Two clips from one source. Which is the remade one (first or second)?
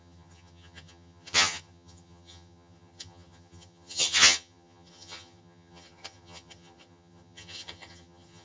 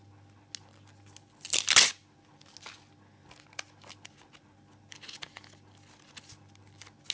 first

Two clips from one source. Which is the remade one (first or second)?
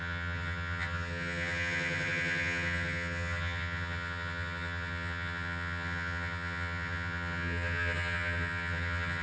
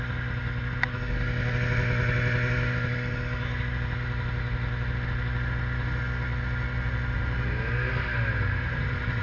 first